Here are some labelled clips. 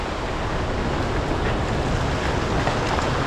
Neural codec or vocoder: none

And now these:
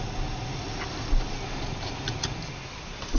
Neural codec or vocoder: none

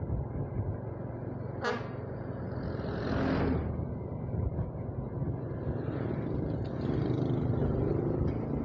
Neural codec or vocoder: none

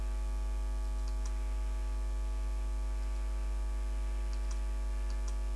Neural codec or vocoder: none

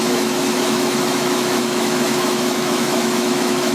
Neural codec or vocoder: autoencoder, DAC-VAE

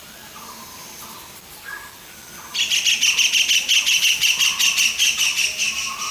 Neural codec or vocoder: none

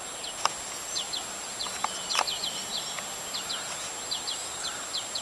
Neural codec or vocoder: none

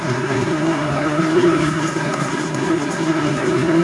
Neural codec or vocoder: codec, SNAC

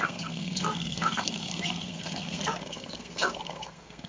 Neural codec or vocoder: codec, SNAC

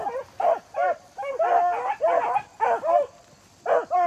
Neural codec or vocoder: none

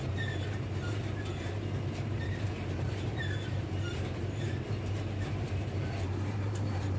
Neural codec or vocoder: vocoder, BigVGAN v2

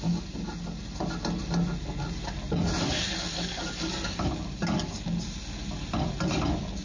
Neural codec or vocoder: none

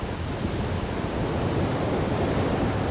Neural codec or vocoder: none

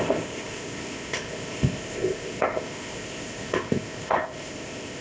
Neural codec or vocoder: codec, ZipCodec